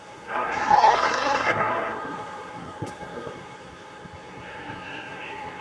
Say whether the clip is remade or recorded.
remade